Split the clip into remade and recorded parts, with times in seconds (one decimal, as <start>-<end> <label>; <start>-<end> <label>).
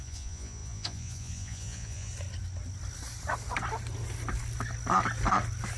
0.0-2.1 remade; 2.1-5.8 recorded